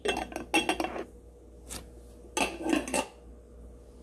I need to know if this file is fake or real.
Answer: real